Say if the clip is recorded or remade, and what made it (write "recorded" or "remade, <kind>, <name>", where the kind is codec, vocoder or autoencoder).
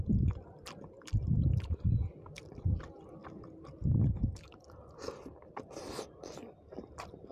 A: remade, vocoder, BigVGAN v2